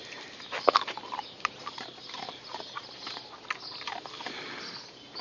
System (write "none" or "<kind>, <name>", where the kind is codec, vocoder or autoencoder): none